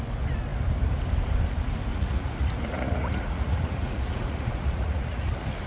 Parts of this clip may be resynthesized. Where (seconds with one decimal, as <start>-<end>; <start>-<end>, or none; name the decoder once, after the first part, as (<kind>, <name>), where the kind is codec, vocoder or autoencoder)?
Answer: 1.9-5.3 (vocoder, Vocos)